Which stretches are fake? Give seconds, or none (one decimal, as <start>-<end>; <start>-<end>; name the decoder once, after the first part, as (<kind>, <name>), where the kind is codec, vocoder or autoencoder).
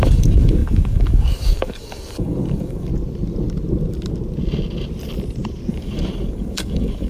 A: 0.0-2.9 (codec, DAC); 5.7-7.1